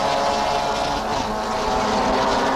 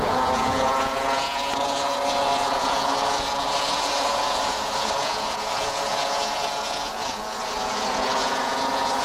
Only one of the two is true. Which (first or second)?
first